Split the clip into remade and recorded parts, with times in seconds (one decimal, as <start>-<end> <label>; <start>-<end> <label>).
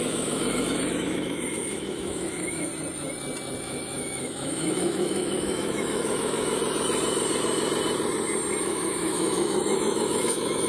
0.0-2.7 remade; 2.7-3.6 recorded; 3.6-6.6 remade; 6.6-8.6 recorded; 8.6-10.7 remade